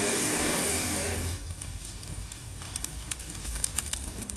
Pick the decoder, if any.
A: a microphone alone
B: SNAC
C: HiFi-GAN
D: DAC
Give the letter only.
D